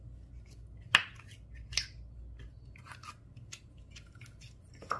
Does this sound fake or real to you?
real